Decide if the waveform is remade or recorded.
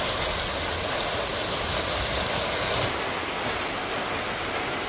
recorded